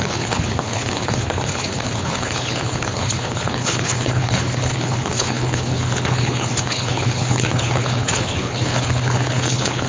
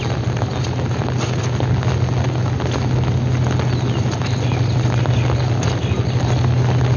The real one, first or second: second